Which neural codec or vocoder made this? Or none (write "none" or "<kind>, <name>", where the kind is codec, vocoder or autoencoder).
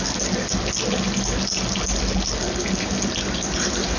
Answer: none